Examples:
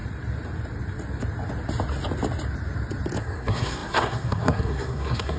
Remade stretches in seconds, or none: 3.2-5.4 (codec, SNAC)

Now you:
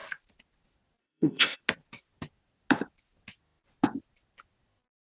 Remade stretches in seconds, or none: 1.0-1.6 (codec, ZipCodec)

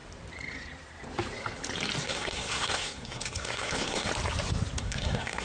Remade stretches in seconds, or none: 2.0-4.1 (codec, SNAC); 4.8-5.4

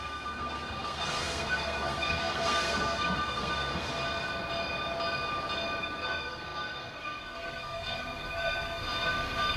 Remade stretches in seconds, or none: 0.0-3.9 (codec, SNAC); 5.8-9.6

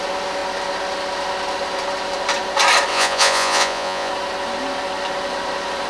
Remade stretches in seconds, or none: 2.9-4.1 (vocoder, Vocos)

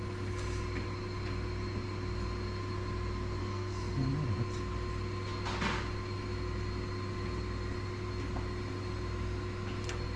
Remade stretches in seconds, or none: 3.4-4.1 (codec, SNAC)

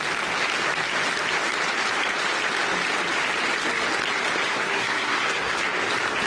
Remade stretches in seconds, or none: 4.5-5.5 (codec, SNAC)

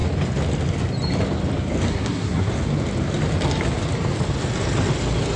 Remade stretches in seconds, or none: 1.9-2.5 (codec, SNAC)